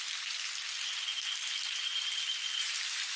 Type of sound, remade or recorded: recorded